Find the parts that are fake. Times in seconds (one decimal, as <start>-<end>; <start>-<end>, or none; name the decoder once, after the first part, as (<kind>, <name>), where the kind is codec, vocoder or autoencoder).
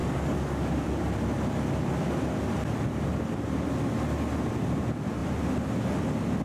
0.0-1.0 (codec, DAC)